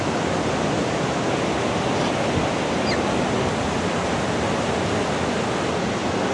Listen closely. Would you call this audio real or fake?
real